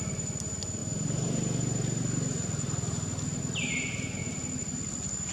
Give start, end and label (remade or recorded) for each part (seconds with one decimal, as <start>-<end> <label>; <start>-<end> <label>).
0.0-5.3 recorded